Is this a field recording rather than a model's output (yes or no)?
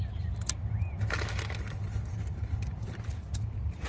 yes